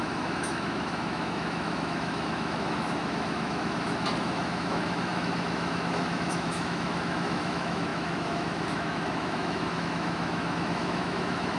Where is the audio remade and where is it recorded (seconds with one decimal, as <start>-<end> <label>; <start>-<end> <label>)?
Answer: 0.0-11.6 remade